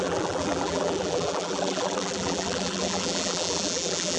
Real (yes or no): no